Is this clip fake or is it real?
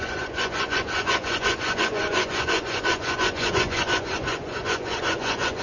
fake